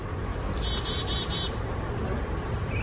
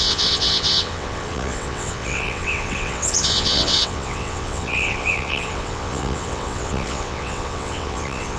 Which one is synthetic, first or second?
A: second